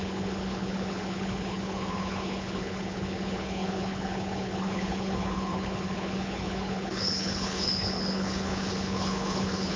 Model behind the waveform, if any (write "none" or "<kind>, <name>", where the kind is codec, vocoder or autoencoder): codec, HILCodec